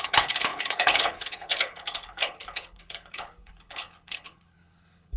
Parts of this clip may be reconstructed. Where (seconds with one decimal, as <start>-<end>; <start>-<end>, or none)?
0.0-5.2